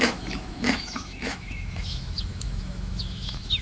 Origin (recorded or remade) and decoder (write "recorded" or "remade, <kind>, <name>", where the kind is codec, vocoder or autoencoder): remade, autoencoder, DAC-VAE